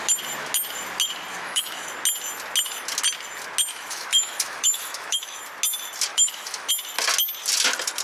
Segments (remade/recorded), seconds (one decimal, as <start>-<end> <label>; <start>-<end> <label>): 0.0-1.3 recorded; 1.3-1.9 remade; 1.9-3.7 recorded; 3.7-5.4 remade; 5.4-6.1 recorded; 6.1-6.7 remade; 6.7-8.0 recorded